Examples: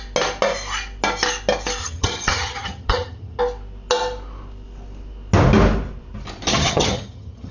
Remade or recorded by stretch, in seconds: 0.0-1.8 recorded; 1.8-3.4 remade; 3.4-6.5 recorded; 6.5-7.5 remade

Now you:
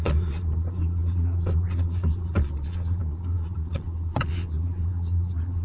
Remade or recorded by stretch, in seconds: 0.0-5.6 remade

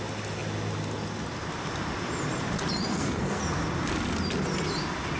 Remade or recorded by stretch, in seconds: 0.0-2.9 recorded; 2.9-3.4 remade; 3.4-5.2 recorded

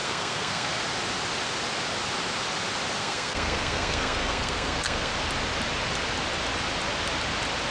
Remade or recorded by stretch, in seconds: 0.0-0.8 remade; 0.8-3.0 recorded; 3.0-5.1 remade; 5.1-7.7 recorded

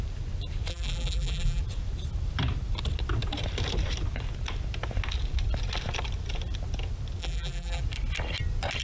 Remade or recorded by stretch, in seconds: 0.0-0.7 recorded; 0.7-1.6 remade; 1.6-7.2 recorded; 7.2-7.8 remade; 7.8-8.8 recorded

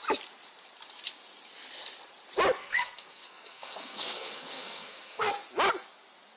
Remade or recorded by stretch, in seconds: 0.0-2.6 recorded; 2.6-5.3 remade; 5.3-6.4 recorded